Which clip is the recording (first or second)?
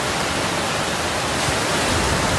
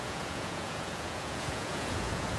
first